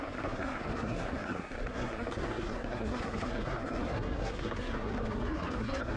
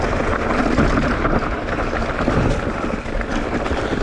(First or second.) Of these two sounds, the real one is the second